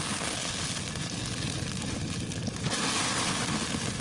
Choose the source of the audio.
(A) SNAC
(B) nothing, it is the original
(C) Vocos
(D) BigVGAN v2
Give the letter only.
B